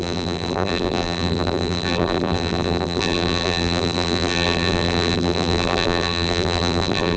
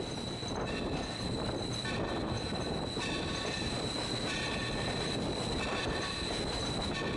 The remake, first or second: first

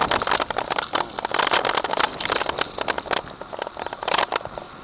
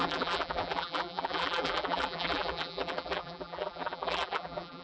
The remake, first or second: second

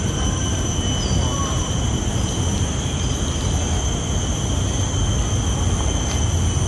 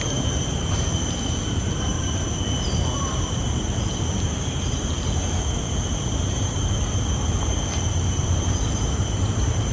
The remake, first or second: second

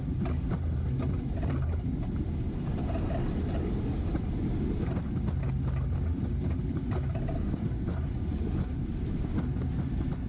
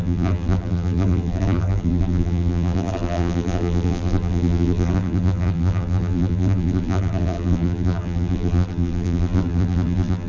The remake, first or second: second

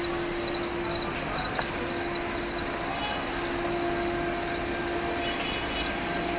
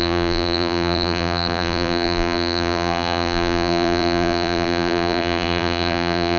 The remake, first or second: second